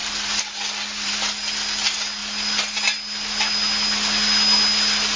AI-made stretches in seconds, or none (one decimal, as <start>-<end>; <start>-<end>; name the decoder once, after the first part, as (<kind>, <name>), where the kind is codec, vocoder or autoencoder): none